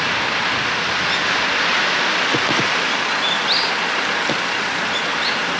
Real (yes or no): yes